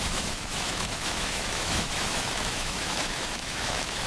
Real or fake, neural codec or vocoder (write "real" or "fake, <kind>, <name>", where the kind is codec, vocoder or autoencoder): fake, autoencoder, DAC-VAE